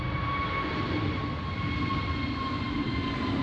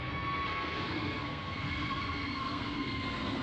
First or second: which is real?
first